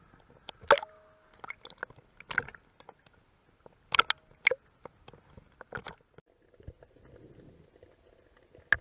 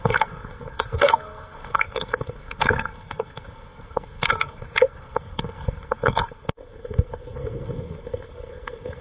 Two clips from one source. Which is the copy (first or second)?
second